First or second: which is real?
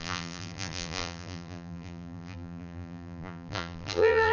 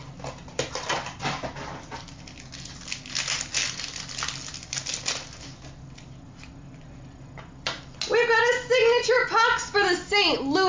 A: second